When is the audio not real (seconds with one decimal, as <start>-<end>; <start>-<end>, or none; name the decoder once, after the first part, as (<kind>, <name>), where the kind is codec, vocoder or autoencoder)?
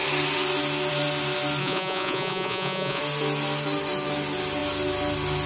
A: 1.6-3.0 (vocoder, Vocos)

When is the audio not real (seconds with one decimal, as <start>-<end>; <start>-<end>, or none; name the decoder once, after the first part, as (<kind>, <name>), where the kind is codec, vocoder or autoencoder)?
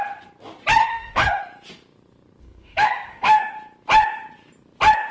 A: 0.8-1.4 (autoencoder, DAC-VAE); 2.4-3.4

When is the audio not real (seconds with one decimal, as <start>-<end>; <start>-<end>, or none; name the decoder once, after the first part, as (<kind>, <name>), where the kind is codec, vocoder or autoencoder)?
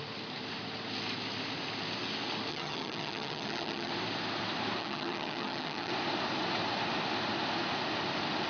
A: 2.5-3.9 (vocoder, HiFi-GAN); 4.8-5.9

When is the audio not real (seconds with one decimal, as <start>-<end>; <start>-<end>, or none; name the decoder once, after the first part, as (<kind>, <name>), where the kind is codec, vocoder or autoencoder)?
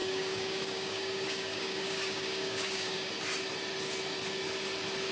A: 0.0-3.1 (codec, DAC)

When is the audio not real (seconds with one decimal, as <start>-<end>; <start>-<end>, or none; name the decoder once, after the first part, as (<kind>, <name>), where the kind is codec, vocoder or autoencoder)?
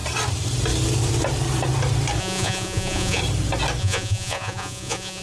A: 2.2-3.2 (vocoder, Vocos); 3.8-5.2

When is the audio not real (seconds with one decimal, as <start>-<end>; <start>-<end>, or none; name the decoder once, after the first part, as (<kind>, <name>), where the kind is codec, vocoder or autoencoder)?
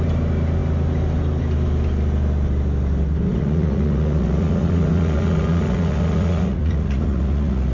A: 3.3-7.7 (vocoder, Vocos)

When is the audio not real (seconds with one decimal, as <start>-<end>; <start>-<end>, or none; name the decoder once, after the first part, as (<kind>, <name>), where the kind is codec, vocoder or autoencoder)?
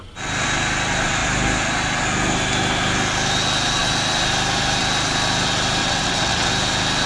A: 5.8-6.5 (vocoder, WaveNeXt)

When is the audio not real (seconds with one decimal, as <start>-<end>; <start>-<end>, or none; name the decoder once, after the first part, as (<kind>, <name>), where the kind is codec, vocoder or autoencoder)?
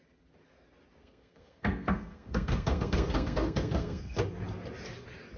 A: 1.0-4.2 (codec, SNAC)